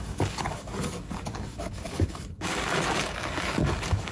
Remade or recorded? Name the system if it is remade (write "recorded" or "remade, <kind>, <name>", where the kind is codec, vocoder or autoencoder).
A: remade, codec, DAC